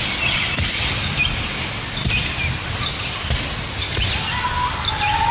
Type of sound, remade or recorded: recorded